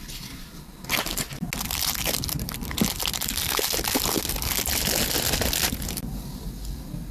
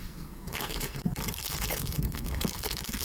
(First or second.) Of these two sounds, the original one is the first